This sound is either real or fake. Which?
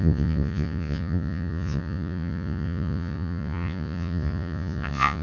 fake